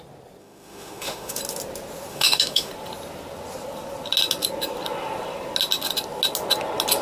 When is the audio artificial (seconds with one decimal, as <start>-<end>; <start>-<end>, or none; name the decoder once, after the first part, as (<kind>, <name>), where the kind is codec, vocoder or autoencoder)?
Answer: 0.4-1.4 (autoencoder, DAC-VAE); 2.1-2.7